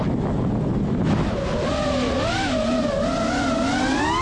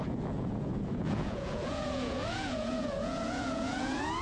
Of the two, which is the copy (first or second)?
second